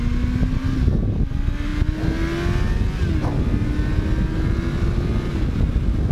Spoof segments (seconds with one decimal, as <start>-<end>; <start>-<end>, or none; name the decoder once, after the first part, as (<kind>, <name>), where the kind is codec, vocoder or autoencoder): none